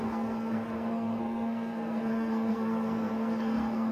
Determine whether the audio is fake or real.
fake